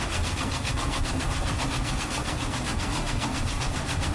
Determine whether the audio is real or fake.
fake